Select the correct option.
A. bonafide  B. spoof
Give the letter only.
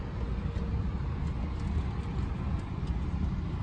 A